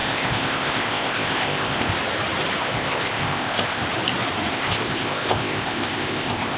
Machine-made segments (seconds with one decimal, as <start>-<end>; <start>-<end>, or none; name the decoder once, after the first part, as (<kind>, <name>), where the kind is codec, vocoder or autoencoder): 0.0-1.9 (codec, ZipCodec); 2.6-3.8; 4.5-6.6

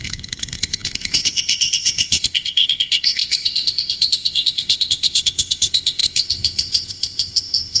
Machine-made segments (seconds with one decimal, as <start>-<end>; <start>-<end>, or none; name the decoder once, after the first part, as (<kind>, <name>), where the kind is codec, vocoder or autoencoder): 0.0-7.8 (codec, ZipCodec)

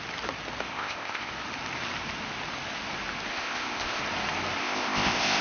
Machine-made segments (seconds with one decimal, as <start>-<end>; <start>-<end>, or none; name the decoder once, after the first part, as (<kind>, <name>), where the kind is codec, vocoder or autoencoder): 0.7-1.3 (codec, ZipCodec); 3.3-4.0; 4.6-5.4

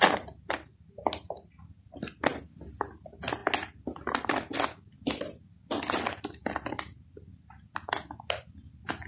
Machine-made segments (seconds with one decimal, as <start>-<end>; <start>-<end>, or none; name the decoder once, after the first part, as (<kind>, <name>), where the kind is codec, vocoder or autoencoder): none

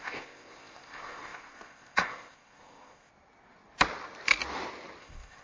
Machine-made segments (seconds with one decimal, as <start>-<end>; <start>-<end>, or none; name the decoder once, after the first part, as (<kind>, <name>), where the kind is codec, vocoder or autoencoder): 0.0-3.1 (codec, ZipCodec); 5.0-5.4

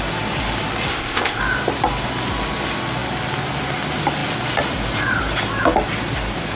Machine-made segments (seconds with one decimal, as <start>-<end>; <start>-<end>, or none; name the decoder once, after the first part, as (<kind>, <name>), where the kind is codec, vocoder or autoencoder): 0.9-1.4 (codec, ZipCodec)